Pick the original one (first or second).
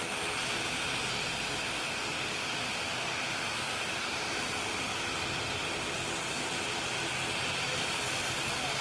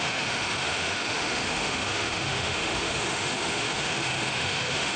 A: first